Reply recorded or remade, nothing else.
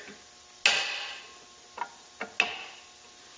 recorded